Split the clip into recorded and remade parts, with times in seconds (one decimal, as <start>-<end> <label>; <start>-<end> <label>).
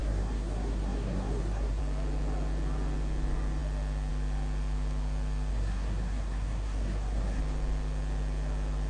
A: 0.0-1.8 remade; 1.8-5.5 recorded; 5.5-7.4 remade; 7.4-8.9 recorded